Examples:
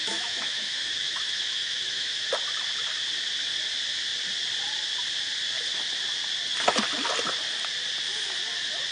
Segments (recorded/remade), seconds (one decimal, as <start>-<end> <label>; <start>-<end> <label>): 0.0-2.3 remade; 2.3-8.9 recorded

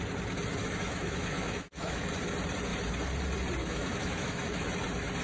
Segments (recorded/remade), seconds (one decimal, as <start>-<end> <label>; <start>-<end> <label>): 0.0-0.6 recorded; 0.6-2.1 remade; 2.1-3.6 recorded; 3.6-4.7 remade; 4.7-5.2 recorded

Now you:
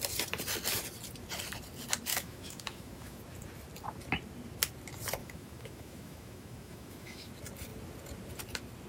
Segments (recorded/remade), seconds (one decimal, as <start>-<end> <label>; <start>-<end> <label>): 0.0-2.1 recorded; 2.1-3.2 remade; 3.2-5.2 recorded; 5.2-7.3 remade; 7.3-8.9 recorded

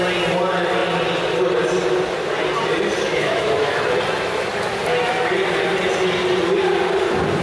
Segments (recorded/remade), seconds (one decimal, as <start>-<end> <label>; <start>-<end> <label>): 0.0-3.1 recorded; 3.1-3.8 remade; 3.8-7.4 recorded